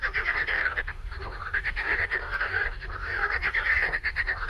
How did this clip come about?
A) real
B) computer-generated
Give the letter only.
B